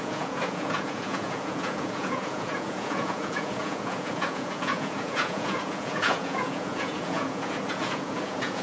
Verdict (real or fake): fake